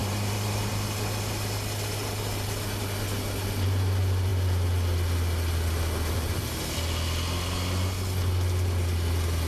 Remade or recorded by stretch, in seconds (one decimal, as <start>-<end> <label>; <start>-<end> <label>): 0.0-0.7 remade; 0.7-9.5 recorded